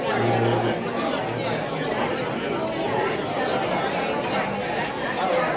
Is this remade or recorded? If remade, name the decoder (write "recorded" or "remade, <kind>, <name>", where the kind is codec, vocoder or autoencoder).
recorded